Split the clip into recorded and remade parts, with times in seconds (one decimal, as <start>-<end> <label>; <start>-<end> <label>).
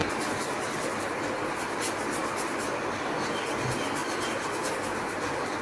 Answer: 0.0-2.2 recorded; 2.2-2.8 remade; 2.8-4.0 recorded; 4.0-4.7 remade; 4.7-5.6 recorded